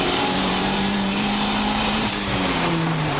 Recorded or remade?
remade